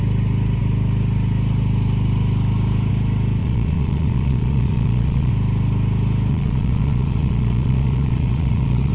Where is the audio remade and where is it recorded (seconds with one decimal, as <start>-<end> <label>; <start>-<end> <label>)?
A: 0.0-3.4 recorded; 3.4-5.3 remade; 5.3-6.3 recorded; 6.3-8.9 remade